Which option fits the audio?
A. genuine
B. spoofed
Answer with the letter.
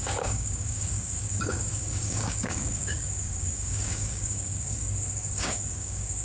B